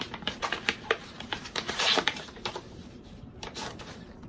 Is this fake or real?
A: fake